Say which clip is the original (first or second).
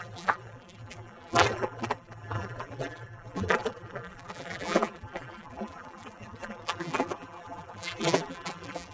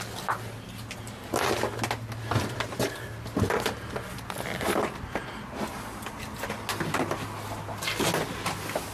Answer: second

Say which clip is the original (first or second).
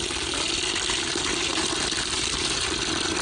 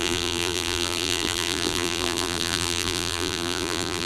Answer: first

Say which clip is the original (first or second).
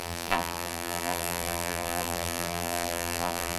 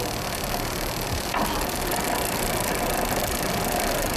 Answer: second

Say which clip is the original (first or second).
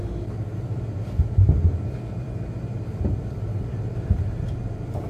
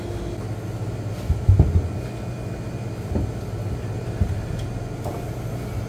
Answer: second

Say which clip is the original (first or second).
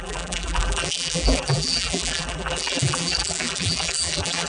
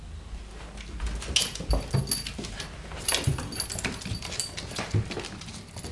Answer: second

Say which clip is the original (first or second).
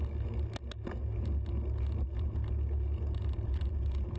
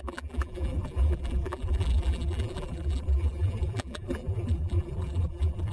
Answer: first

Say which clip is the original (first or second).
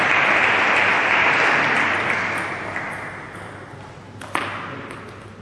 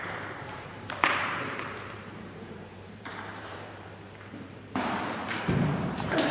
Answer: first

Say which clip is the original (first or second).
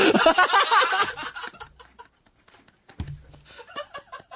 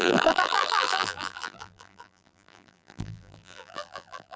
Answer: first